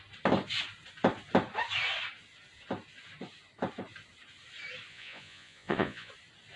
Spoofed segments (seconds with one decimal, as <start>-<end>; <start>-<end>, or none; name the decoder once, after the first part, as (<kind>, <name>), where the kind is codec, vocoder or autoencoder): 4.9-6.1 (vocoder, Vocos)